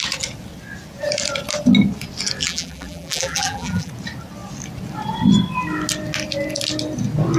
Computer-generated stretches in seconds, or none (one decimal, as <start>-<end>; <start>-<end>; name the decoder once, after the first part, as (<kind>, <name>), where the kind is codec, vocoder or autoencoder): 2.4-3.9 (vocoder, BigVGAN v2)